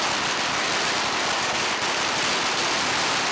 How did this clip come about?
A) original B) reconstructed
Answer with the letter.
A